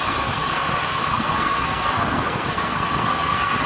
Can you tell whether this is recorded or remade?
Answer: remade